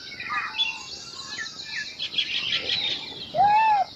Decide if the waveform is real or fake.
real